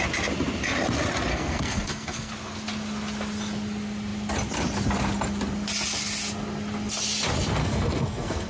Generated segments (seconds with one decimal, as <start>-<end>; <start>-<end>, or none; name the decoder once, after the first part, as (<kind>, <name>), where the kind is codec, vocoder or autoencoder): 1.3-2.3 (codec, SNAC); 7.6-8.5